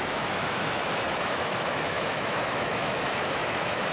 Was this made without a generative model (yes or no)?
no